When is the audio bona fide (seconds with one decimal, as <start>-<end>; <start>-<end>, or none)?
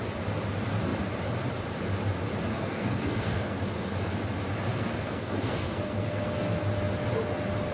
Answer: 0.0-2.5; 3.6-4.7; 6.6-7.7